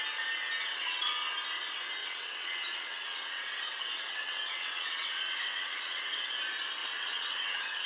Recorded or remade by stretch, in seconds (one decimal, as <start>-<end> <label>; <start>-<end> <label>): 0.0-0.6 recorded; 0.6-1.1 remade; 1.1-2.0 recorded; 2.0-6.3 remade; 6.3-6.8 recorded; 6.8-7.9 remade